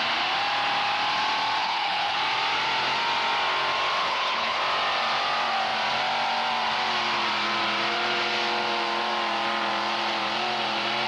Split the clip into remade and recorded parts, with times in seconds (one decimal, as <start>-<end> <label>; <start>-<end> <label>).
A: 0.0-1.6 recorded; 1.6-2.2 remade; 2.2-4.0 recorded; 4.0-4.6 remade; 4.6-11.1 recorded